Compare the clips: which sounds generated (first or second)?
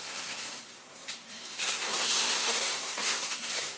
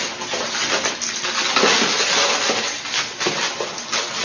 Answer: first